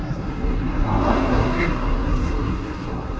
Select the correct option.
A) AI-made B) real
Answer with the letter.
A